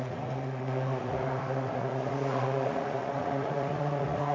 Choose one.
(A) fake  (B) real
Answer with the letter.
A